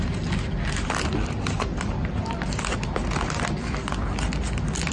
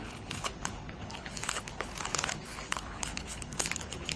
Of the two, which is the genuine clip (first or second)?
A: first